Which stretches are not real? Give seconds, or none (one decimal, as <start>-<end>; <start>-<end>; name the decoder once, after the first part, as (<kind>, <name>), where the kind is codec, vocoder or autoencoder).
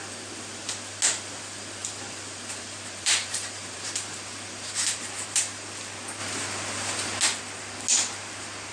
1.8-5.8 (vocoder, BigVGAN v2)